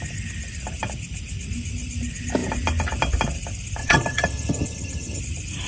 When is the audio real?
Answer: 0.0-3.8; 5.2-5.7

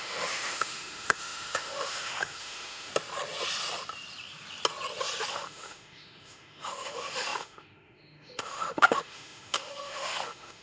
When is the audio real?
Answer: 2.9-5.3

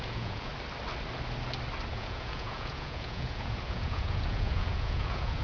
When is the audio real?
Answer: 0.5-1.9

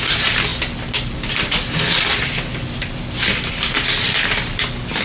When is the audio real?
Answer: 0.0-5.0

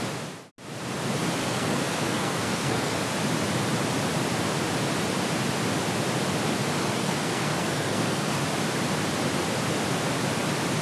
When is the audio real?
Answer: 0.0-1.4; 3.0-6.8; 8.4-10.8

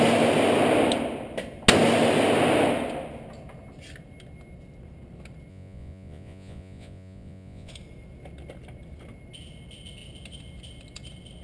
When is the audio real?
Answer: 0.0-5.5; 7.7-11.4

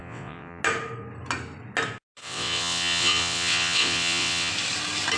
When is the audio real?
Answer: 0.6-2.2; 4.5-5.2